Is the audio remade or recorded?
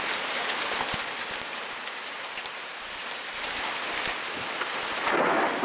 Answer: recorded